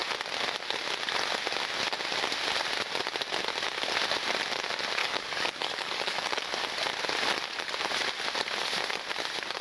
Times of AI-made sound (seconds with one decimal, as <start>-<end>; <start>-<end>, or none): 5.0-6.4